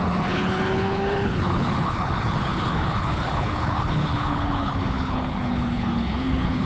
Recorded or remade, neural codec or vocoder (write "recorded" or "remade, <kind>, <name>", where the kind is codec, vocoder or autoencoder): remade, codec, HILCodec